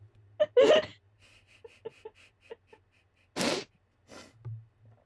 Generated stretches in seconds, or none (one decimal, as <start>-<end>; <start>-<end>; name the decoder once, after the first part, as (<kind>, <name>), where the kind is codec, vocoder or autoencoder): none